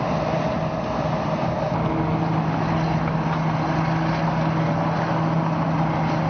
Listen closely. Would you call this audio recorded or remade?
recorded